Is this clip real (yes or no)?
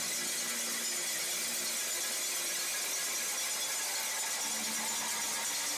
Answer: yes